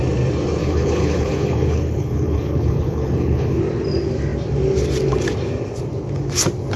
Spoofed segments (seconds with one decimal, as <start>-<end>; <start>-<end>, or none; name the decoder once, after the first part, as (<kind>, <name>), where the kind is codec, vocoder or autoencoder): 0.6-3.6 (codec, HILCodec)